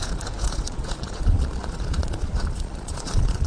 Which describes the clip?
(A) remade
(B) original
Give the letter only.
A